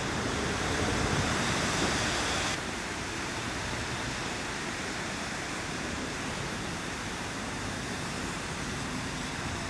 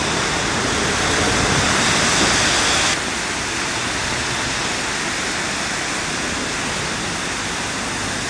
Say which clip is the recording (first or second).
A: second